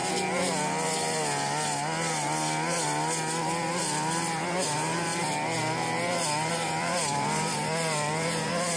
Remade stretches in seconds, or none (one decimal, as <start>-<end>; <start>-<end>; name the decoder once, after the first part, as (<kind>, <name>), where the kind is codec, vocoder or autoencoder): 4.4-5.1 (vocoder, BigVGAN v2); 6.5-8.8